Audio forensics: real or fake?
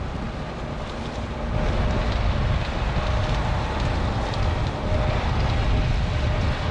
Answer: real